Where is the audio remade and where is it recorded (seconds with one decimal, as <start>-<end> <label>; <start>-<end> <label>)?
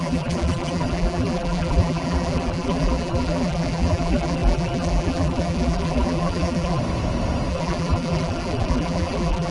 0.0-6.8 remade; 6.8-7.5 recorded; 7.5-9.5 remade